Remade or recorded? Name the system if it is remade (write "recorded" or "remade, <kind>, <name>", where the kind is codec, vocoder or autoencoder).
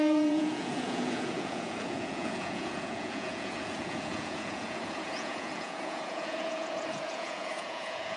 remade, vocoder, Vocos